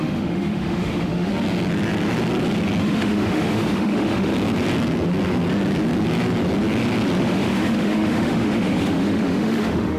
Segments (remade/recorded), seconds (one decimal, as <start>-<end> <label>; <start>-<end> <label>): 0.0-1.3 remade; 1.3-2.8 recorded; 2.8-4.3 remade; 4.3-7.2 recorded; 7.2-10.0 remade